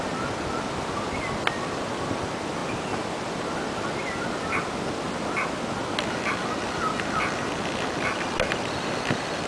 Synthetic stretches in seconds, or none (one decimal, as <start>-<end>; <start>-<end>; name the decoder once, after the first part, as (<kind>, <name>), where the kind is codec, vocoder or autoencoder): none